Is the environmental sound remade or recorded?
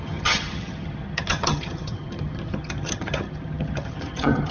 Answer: remade